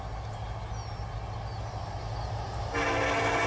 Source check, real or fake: real